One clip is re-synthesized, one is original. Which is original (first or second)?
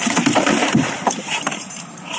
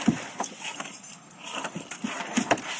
second